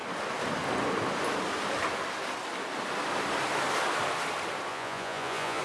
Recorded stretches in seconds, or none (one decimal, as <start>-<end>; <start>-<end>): 0.0-4.7

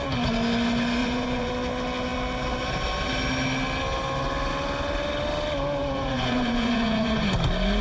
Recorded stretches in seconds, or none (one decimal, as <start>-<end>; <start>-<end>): 0.0-1.0; 1.5-5.8; 7.3-7.8

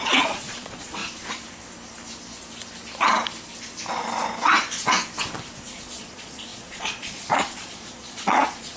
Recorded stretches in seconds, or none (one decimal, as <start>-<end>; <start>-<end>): 1.0-5.6

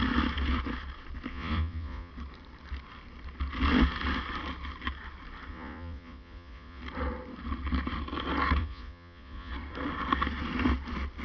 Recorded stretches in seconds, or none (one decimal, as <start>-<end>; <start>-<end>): 0.0-1.3; 2.1-5.5; 6.8-8.6; 9.5-11.2

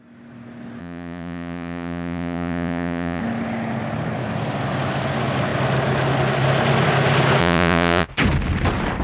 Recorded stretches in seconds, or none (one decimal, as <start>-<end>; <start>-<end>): 0.0-0.8; 3.2-7.4; 8.1-9.0